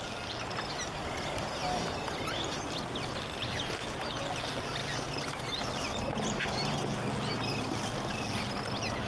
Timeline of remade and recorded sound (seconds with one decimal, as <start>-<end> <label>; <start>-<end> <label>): 0.0-9.1 recorded